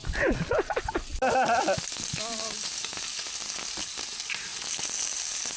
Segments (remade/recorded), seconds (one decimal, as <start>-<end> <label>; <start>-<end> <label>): 0.0-5.6 recorded